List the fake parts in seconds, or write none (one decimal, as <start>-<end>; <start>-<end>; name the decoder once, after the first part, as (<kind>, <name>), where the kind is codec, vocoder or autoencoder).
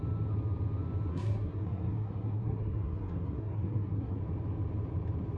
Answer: 1.1-4.2 (codec, SNAC)